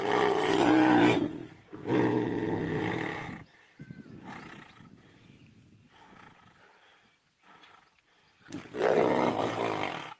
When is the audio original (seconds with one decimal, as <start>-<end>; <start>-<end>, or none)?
0.0-10.2